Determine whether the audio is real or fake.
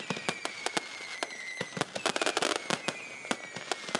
real